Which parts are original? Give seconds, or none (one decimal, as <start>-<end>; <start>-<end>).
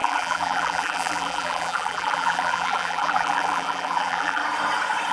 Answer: 4.4-5.1